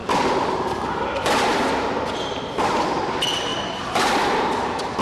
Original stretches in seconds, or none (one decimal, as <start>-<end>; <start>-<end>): 0.0-1.0; 1.5-2.1; 3.5-4.1